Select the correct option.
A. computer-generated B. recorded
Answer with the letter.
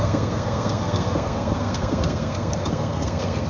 A